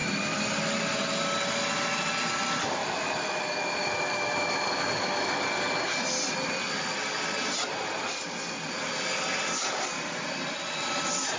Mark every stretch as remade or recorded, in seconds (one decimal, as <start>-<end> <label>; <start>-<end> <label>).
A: 0.0-2.8 recorded; 2.8-5.4 remade; 5.4-11.4 recorded